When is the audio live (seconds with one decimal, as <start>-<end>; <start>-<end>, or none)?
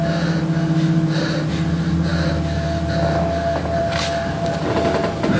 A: 0.0-5.4